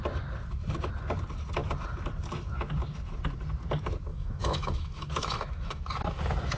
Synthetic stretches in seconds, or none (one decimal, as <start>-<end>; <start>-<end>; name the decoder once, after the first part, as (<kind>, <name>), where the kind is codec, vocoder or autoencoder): 4.1-5.8 (autoencoder, DAC-VAE)